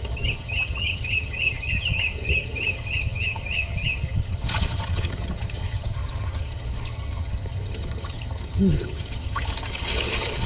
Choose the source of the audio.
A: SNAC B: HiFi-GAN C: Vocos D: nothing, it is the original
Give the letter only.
B